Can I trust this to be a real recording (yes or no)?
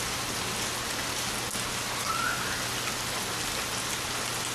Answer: yes